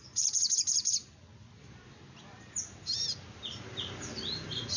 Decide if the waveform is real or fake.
real